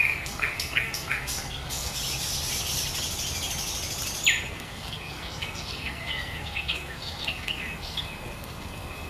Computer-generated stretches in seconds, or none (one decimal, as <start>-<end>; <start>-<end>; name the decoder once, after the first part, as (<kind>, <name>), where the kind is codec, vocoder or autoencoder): 0.0-2.0 (codec, SNAC); 4.5-9.1